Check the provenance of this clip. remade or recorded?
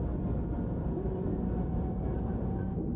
remade